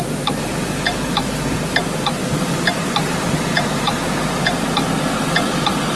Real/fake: real